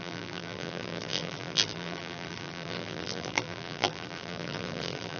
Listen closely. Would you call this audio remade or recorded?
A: remade